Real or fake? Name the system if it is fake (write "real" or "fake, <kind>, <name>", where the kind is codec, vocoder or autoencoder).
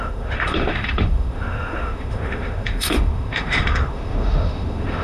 fake, autoencoder, DAC-VAE